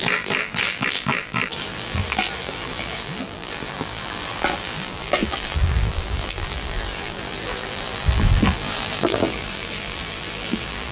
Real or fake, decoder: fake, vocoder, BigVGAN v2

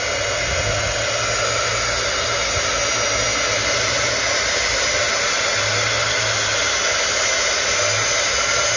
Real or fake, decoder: real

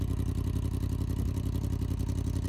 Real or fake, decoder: real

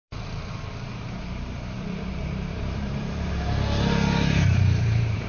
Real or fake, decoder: fake, vocoder, BigVGAN v2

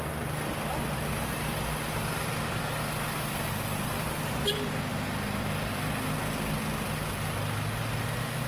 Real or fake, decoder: real